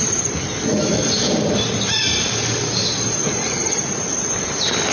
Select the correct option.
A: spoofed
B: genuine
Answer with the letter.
B